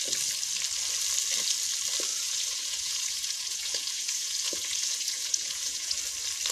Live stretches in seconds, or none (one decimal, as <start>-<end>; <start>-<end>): 0.0-2.1; 6.0-6.5